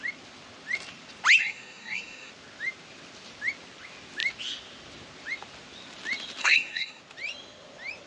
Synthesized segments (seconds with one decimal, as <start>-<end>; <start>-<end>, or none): 1.4-2.3; 6.4-7.0